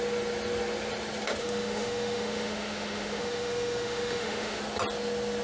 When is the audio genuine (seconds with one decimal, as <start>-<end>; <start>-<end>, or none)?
0.0-1.4; 4.6-5.4